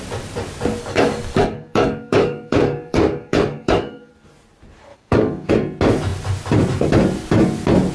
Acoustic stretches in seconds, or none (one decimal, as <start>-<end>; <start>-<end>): 0.0-0.8; 4.1-4.9; 5.5-7.9